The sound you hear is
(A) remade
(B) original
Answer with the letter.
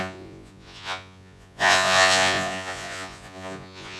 A